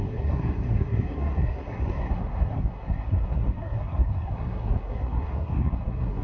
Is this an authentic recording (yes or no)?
no